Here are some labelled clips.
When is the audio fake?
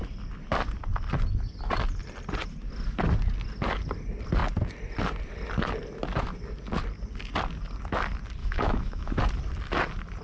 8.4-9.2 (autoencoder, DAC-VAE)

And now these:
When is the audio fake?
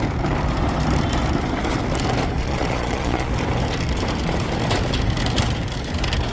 2.4-3.3 (vocoder, Vocos)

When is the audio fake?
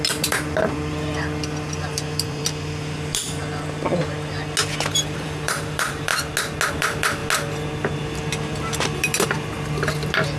0.0-3.4 (vocoder, BigVGAN v2); 4.9-6.1; 6.7-7.2; 9.0-10.4